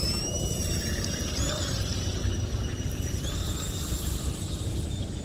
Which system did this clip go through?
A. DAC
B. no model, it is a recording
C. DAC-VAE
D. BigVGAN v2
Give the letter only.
D